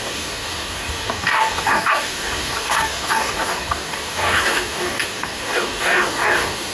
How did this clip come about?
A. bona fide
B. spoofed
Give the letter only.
B